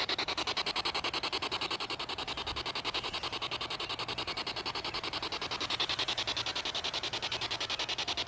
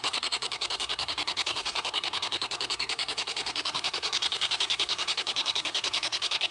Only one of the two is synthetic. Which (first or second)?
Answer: second